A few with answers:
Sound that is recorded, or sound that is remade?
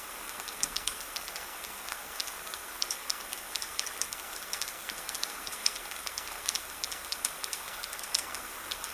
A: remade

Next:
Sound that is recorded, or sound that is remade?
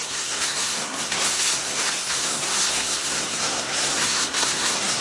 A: remade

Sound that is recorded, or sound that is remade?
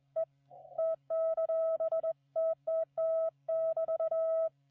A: remade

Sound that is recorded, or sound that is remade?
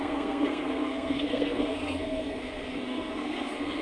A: remade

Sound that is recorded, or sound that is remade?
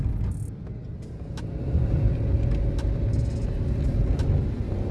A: recorded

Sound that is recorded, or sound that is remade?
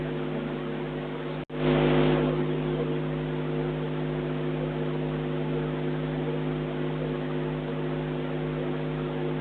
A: recorded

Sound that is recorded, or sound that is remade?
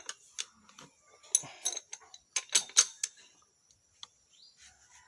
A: recorded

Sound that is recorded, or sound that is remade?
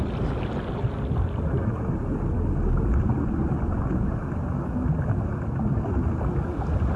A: recorded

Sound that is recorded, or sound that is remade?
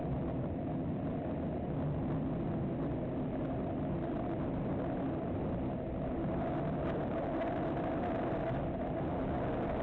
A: recorded